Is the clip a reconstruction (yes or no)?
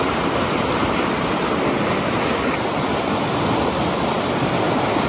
no